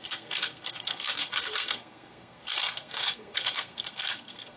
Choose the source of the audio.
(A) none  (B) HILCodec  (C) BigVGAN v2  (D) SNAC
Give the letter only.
D